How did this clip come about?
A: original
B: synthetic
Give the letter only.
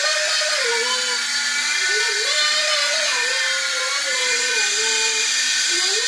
A